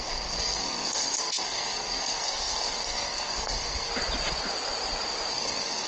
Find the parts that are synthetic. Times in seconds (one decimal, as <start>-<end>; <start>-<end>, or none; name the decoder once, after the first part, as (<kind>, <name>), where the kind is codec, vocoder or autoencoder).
0.0-3.9 (codec, SNAC); 5.3-5.9